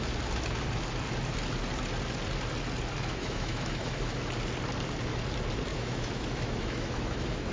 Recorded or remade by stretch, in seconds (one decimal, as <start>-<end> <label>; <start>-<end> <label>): 0.0-3.1 recorded; 3.1-4.2 remade; 4.2-5.7 recorded; 5.7-7.5 remade